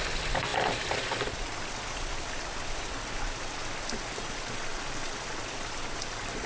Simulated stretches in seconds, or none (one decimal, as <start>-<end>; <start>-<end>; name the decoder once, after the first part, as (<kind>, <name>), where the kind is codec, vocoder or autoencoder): none